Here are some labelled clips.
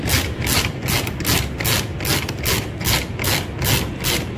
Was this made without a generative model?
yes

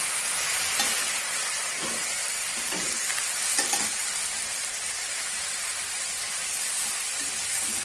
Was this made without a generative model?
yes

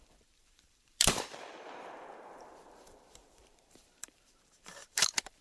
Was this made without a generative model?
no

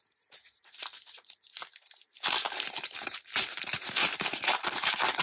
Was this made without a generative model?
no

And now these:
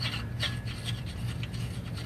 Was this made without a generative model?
yes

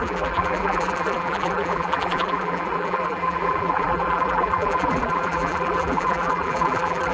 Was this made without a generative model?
no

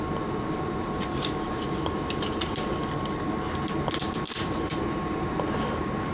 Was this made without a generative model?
no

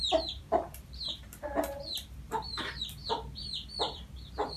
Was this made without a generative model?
no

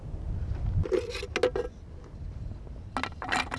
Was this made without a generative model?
yes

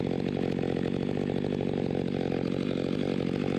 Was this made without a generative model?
no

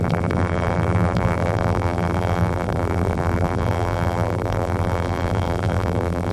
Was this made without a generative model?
no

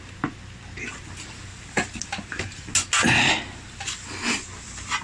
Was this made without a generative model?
yes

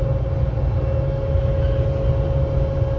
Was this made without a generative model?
yes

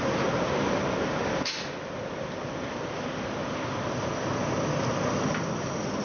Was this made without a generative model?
yes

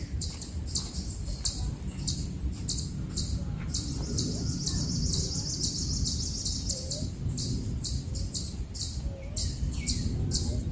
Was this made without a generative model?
yes